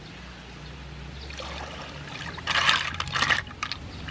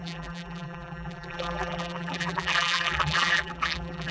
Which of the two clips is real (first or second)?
first